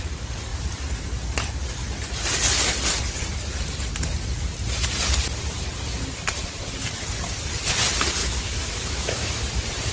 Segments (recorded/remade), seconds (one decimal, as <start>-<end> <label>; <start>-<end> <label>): 0.0-8.2 recorded; 8.2-9.4 remade; 9.4-9.9 recorded